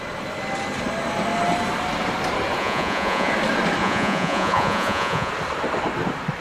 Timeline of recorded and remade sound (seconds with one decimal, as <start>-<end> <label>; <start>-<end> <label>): 0.0-2.6 recorded; 2.6-3.3 remade; 3.3-3.8 recorded; 3.8-5.3 remade; 5.3-6.4 recorded